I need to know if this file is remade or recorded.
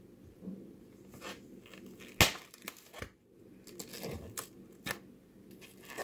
recorded